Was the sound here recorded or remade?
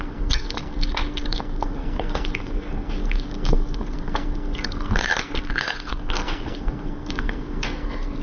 remade